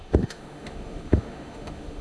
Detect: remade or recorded remade